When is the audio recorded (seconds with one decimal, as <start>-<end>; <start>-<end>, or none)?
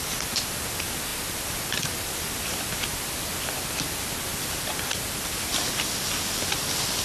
0.0-4.3; 5.3-7.0